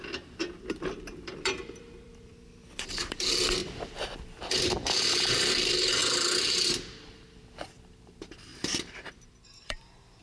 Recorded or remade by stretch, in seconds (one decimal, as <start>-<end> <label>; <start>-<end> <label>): 0.0-10.2 remade